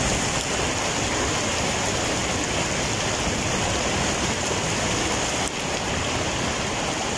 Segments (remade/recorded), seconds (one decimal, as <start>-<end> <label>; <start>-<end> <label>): 0.0-7.2 recorded